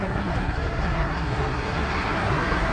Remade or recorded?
remade